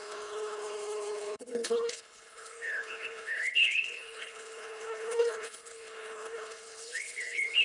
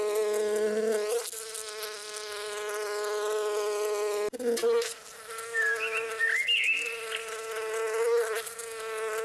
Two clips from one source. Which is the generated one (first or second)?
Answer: first